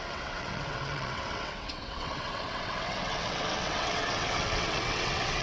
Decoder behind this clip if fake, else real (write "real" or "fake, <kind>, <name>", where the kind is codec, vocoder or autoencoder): fake, vocoder, WaveNeXt